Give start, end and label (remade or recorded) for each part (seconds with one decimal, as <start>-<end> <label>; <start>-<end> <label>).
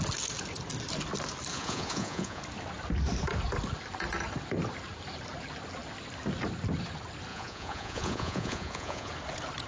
0.0-1.5 recorded; 1.5-2.4 remade; 2.4-7.3 recorded; 7.3-9.1 remade; 9.1-9.7 recorded